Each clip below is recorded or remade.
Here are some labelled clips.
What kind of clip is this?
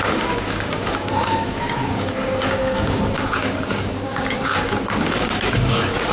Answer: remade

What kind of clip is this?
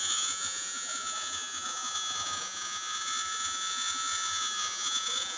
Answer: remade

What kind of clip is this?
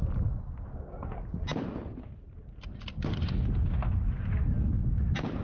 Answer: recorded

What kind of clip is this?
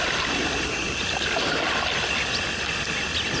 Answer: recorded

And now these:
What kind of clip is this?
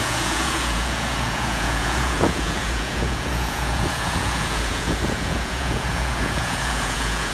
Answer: remade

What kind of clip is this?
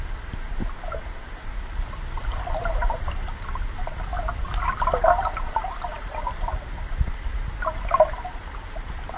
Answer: recorded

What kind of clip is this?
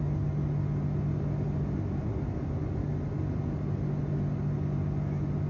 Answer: recorded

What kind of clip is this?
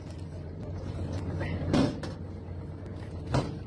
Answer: remade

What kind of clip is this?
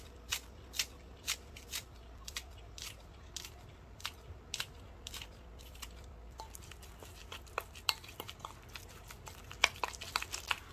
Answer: recorded